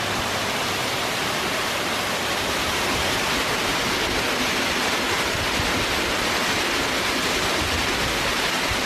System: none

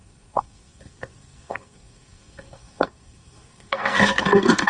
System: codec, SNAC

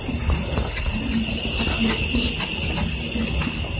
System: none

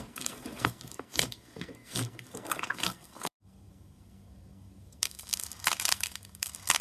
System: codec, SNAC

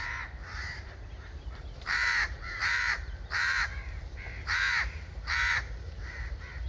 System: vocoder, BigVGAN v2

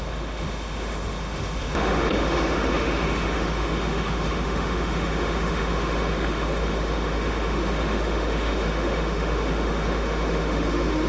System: autoencoder, DAC-VAE